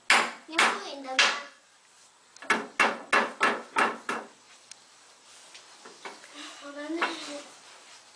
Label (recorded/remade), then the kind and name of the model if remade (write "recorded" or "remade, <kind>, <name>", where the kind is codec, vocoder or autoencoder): recorded